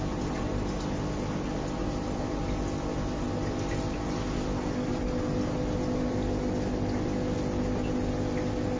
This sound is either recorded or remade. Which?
recorded